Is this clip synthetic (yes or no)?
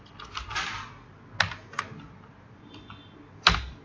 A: no